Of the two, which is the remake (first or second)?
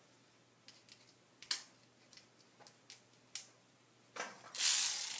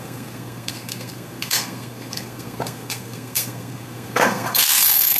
second